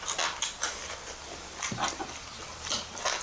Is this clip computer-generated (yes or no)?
no